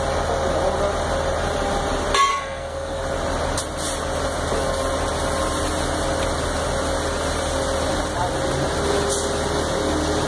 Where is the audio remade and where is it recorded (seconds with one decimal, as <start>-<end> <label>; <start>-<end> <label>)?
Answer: 0.0-2.3 recorded; 2.3-3.0 remade; 3.0-10.3 recorded

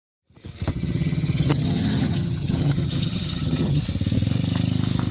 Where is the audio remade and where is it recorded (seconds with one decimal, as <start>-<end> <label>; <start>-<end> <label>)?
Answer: 0.0-0.7 recorded; 0.7-3.8 remade; 3.8-5.1 recorded

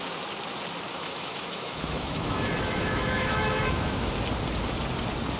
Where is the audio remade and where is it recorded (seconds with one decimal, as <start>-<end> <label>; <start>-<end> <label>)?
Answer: 0.0-0.9 recorded; 0.9-4.1 remade; 4.1-5.4 recorded

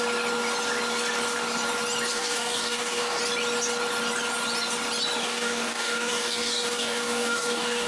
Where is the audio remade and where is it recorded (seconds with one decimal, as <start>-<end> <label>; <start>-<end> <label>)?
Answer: 0.0-2.1 recorded; 2.1-3.2 remade; 3.2-5.2 recorded; 5.2-7.9 remade